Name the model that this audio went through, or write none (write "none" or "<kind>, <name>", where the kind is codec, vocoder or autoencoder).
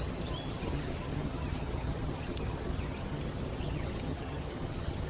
vocoder, HiFi-GAN